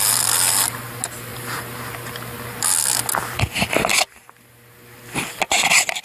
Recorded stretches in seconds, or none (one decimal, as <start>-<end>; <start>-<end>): 0.0-1.3; 2.1-6.0